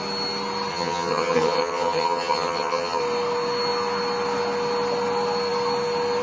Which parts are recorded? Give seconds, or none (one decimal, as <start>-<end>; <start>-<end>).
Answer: 0.0-0.7; 3.0-6.2